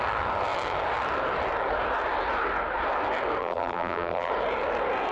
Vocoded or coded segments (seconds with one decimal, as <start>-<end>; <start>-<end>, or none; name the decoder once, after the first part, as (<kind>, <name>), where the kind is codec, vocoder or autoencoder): 3.4-4.3 (vocoder, BigVGAN v2)